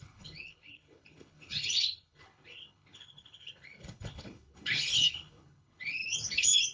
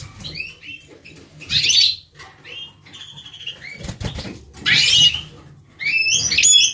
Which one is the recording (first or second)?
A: second